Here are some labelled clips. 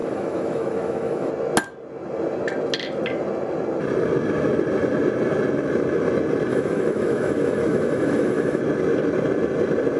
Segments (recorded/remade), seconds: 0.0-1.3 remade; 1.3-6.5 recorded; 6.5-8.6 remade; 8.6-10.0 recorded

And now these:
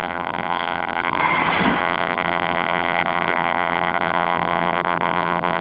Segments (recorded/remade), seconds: 0.0-1.2 remade; 1.2-1.8 recorded; 1.8-5.6 remade